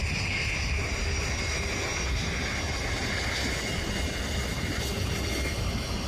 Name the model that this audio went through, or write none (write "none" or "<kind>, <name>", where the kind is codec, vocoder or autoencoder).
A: none